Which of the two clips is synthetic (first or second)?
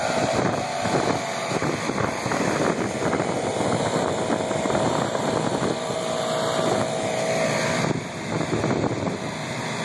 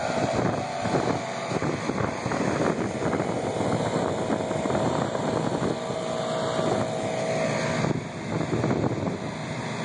first